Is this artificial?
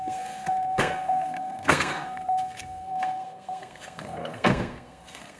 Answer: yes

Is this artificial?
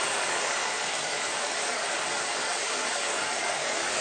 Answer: yes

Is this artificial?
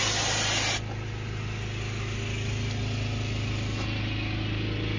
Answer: no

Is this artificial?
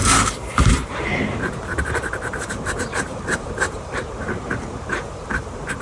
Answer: yes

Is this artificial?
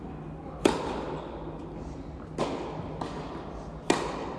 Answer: no